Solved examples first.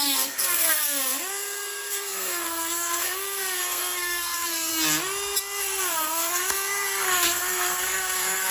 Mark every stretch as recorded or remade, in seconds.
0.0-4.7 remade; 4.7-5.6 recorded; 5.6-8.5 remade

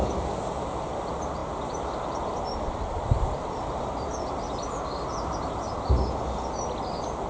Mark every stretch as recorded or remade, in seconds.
0.0-7.3 recorded

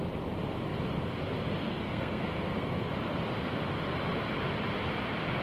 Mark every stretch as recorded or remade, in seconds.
0.0-1.6 recorded; 1.6-2.9 remade; 2.9-5.4 recorded

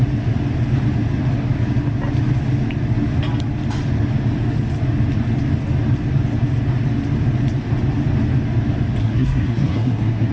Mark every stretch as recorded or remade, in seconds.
0.0-9.0 recorded; 9.0-10.3 remade

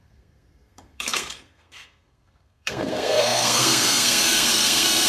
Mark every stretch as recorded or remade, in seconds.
0.0-5.1 remade

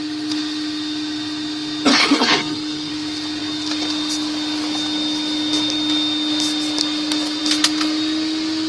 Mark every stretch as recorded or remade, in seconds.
0.0-1.9 recorded; 1.9-2.9 remade; 2.9-8.7 recorded